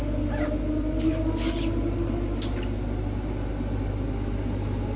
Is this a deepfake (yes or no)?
no